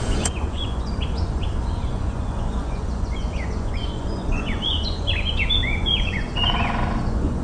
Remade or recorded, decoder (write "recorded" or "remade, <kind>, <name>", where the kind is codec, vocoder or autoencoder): remade, vocoder, Vocos